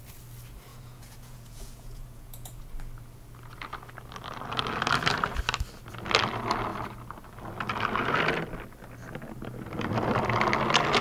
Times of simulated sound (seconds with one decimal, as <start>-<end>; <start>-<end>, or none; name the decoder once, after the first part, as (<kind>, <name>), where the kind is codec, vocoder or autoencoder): 0.7-2.6 (vocoder, Vocos)